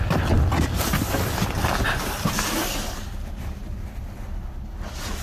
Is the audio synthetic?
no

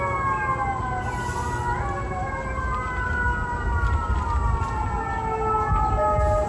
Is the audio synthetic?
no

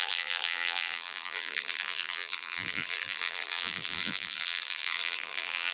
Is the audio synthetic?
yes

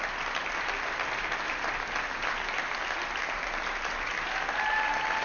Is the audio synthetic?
no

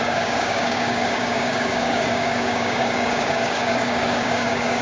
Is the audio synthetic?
yes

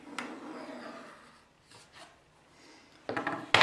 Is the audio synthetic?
no